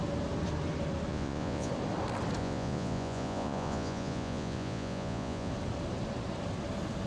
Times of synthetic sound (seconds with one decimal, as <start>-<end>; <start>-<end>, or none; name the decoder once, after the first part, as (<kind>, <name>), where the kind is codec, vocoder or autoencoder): 1.1-1.7 (vocoder, Vocos); 2.4-5.5